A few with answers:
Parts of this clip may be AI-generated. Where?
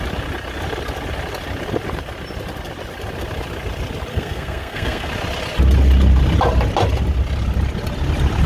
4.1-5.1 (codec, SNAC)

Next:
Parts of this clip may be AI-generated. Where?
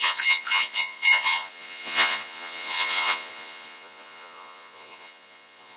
0.0-5.8 (vocoder, Vocos)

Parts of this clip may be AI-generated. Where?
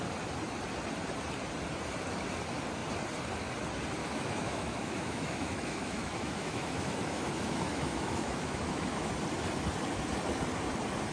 4.0-9.1 (autoencoder, DAC-VAE)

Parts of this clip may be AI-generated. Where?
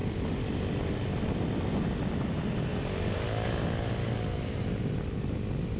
4.0-4.6 (codec, DAC)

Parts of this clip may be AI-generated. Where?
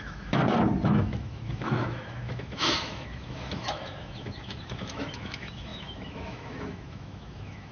0.0-0.4 (autoencoder, DAC-VAE); 1.0-7.7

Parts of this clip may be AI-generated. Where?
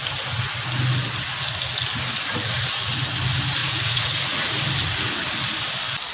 3.6-4.5 (vocoder, Vocos)